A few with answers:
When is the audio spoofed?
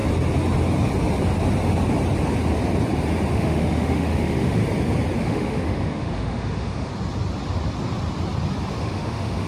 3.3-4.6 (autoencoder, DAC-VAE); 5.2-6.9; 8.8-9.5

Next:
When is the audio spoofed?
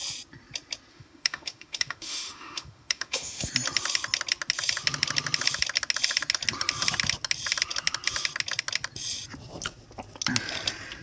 0.9-3.5 (autoencoder, DAC-VAE)